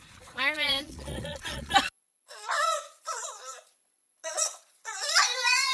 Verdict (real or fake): fake